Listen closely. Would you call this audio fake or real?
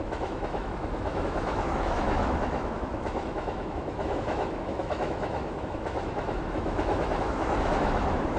fake